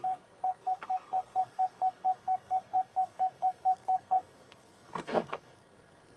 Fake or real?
fake